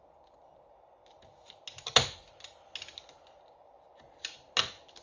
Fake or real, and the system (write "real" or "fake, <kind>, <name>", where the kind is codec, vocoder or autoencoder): real